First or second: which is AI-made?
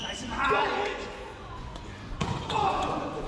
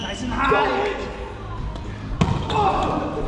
first